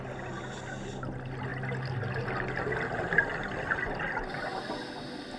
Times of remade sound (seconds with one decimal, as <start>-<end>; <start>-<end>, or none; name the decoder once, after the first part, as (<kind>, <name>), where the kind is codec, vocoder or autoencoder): none